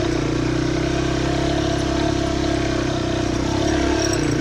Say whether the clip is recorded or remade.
recorded